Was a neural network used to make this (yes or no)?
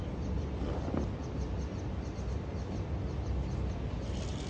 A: no